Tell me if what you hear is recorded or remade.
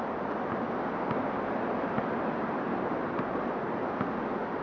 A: recorded